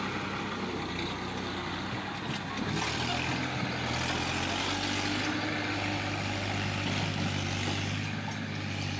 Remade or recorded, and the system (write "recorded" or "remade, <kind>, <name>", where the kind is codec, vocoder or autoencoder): recorded